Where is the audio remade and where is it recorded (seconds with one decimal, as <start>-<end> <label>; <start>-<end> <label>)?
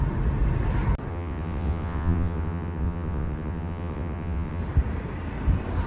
0.0-1.1 recorded; 1.1-4.6 remade; 4.6-5.9 recorded